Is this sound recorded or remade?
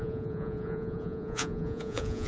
remade